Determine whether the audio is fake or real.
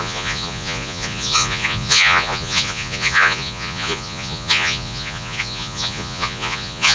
fake